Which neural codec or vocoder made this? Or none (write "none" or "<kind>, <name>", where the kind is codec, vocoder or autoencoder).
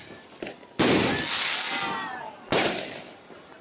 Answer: none